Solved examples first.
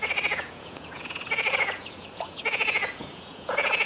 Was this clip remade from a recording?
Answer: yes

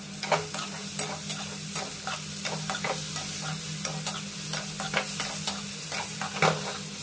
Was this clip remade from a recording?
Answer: no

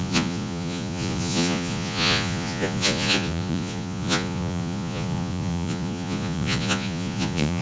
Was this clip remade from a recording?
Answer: yes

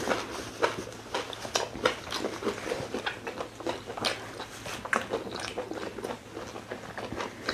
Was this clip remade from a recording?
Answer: no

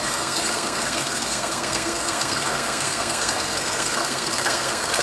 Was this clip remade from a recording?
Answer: yes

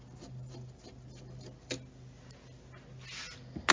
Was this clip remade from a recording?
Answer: no